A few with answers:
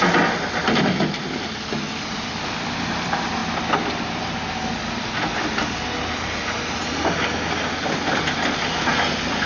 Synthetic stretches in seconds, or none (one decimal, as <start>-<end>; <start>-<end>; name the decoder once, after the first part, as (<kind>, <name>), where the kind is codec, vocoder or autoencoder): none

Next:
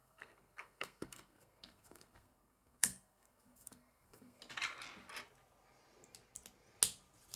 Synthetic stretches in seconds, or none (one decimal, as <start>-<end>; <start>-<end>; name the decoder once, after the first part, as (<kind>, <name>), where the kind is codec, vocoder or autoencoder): 0.0-4.4 (codec, SNAC)

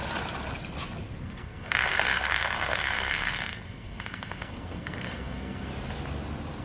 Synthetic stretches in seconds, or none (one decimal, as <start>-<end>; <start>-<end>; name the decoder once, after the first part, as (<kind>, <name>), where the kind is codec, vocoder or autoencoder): 1.2-5.7 (codec, SNAC)